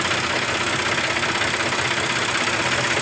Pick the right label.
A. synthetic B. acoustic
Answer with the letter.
B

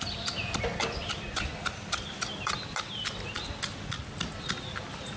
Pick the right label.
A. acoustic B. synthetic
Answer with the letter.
A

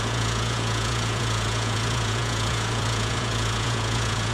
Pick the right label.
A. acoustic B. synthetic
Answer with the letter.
B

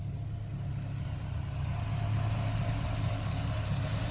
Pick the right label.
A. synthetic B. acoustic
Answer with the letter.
B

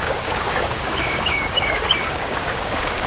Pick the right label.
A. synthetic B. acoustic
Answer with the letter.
A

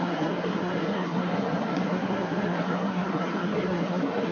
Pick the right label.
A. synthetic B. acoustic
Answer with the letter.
A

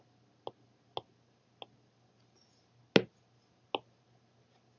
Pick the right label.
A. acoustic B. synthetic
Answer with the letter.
A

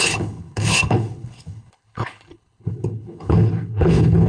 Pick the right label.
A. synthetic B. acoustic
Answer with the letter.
A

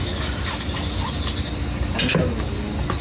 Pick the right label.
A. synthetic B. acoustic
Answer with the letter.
B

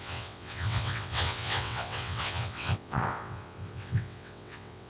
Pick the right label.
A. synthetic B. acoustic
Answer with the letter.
A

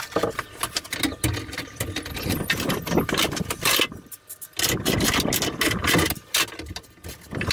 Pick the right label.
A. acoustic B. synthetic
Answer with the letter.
A